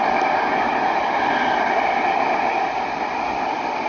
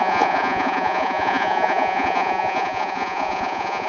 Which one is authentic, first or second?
first